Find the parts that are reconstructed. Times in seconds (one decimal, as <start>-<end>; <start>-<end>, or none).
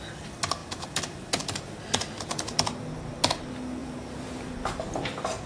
3.8-4.6